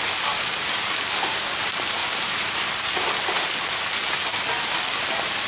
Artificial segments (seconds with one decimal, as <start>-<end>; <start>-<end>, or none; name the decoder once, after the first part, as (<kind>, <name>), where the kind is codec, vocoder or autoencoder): none